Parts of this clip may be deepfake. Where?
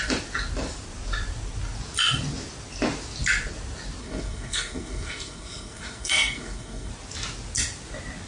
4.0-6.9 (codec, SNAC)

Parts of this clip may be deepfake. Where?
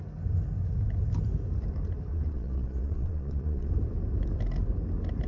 2.1-3.7 (vocoder, Vocos)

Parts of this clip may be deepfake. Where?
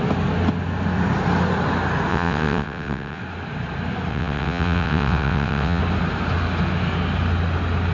2.1-3.2 (vocoder, WaveNeXt); 4.1-5.8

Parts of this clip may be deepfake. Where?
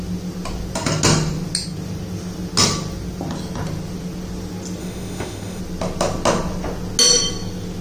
4.8-5.6 (autoencoder, DAC-VAE)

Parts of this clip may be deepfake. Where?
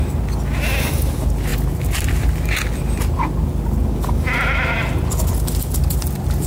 none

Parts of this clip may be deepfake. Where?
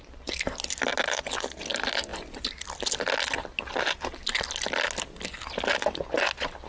none